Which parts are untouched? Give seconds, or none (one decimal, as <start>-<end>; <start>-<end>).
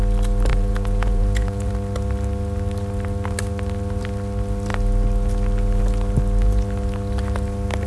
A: 0.0-0.5; 1.7-7.9